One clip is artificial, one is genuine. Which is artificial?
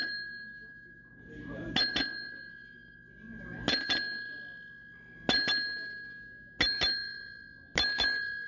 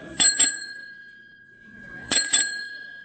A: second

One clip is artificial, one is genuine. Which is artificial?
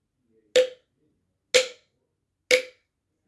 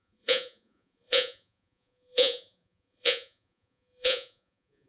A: second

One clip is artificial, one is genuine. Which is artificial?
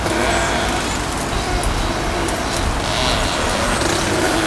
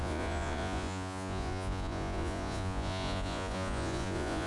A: second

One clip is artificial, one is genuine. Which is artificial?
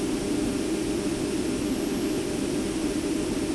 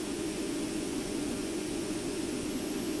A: second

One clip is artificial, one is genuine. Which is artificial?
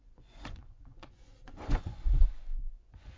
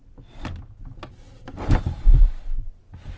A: first